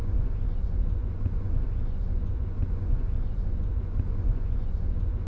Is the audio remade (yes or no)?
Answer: yes